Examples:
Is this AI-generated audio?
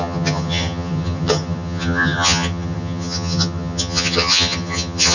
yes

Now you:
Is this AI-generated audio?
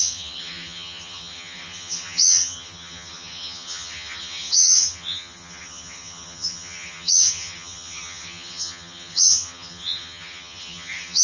yes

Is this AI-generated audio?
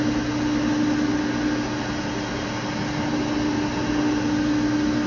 no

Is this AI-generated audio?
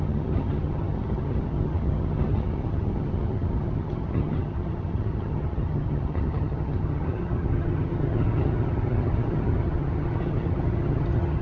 yes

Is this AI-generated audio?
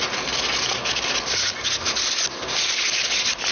no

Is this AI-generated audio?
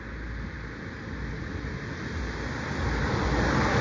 no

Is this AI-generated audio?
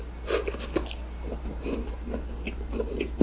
no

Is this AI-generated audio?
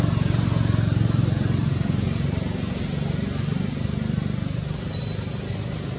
no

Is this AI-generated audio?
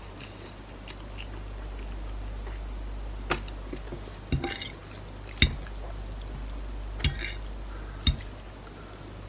no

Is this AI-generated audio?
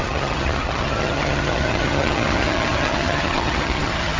yes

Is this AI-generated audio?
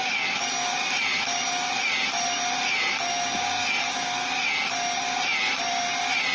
no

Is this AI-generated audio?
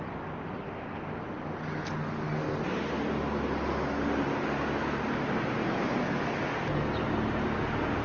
no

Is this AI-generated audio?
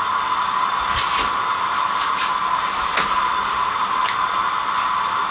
no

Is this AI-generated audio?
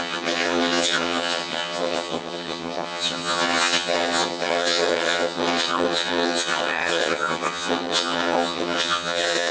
yes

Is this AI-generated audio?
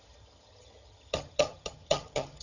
yes